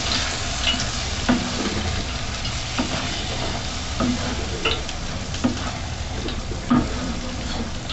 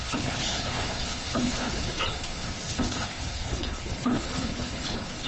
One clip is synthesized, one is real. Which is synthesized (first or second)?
second